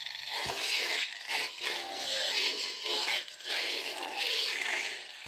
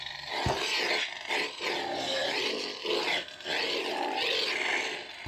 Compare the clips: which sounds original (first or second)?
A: second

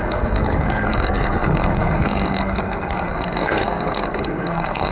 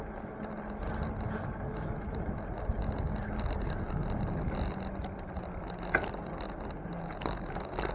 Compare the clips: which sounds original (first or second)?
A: second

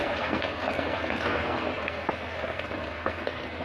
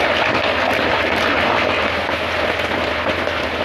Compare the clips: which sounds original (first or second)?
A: second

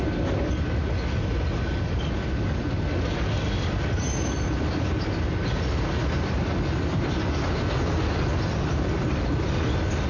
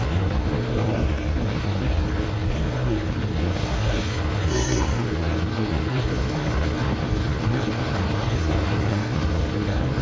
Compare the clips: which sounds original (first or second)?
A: first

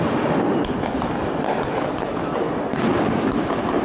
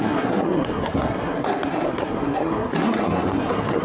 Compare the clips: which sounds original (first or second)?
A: first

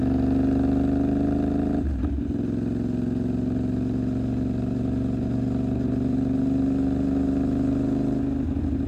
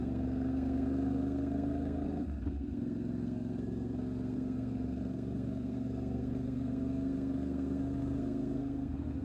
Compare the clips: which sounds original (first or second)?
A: first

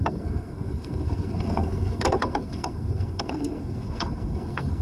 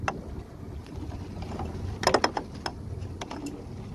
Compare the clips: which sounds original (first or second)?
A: second